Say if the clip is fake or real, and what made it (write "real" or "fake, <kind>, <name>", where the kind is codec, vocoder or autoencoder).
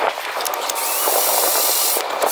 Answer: real